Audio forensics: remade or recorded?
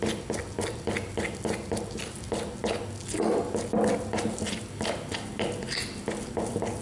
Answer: recorded